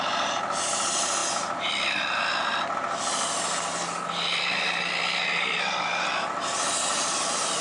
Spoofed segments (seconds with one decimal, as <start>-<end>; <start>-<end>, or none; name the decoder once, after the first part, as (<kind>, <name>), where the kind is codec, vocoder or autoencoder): 6.9-7.6 (vocoder, BigVGAN v2)